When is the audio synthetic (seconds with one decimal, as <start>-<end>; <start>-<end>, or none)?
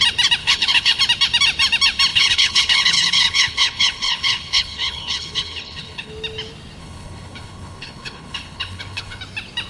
0.4-1.0; 2.1-6.1; 6.8-9.2